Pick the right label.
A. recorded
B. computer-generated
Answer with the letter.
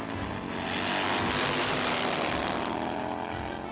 A